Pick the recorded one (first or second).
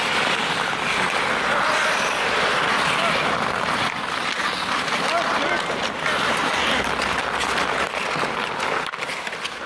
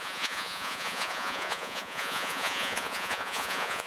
first